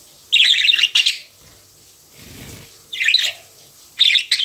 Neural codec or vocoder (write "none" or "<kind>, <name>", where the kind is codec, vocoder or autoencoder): none